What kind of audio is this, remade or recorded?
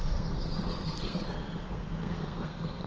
remade